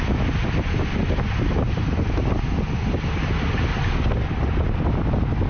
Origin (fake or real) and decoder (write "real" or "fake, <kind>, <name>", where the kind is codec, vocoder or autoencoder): real